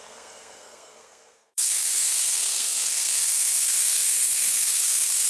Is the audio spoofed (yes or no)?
yes